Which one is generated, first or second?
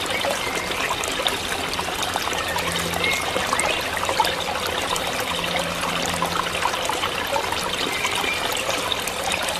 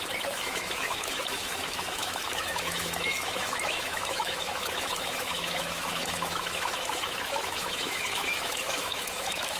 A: second